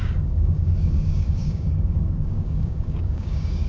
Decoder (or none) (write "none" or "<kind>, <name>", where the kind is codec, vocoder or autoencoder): codec, DAC